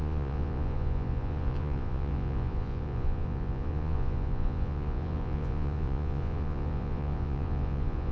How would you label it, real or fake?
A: fake